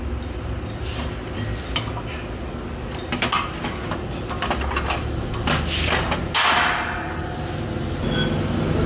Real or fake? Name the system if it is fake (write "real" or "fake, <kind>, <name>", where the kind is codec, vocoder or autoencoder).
real